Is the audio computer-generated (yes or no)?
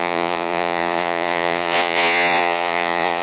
yes